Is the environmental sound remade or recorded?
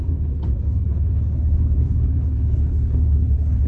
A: remade